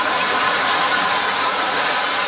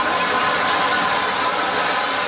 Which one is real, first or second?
second